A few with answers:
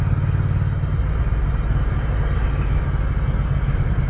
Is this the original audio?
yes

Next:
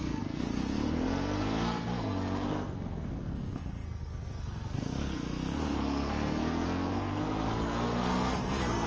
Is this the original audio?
no